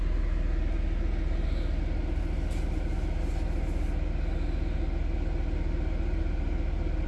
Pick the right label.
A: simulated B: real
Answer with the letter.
B